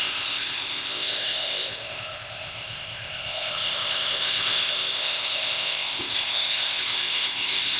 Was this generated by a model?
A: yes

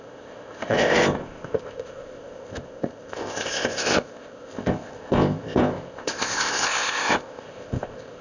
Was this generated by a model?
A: yes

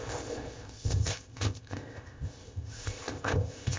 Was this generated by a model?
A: yes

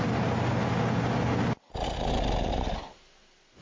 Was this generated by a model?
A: no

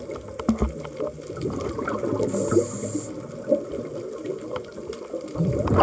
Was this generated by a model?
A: no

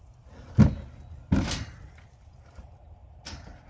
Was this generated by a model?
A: no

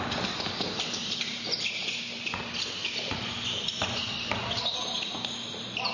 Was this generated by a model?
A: no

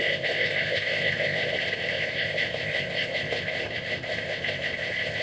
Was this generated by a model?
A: yes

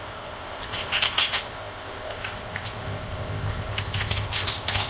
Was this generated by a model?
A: yes